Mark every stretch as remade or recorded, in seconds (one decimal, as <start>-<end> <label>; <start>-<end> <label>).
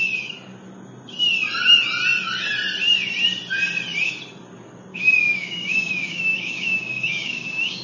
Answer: 0.0-4.9 recorded; 4.9-7.8 remade